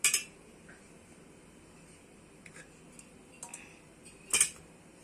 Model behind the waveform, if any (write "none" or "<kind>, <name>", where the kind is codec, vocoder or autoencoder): none